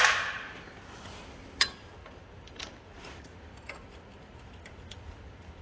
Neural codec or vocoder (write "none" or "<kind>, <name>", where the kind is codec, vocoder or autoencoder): none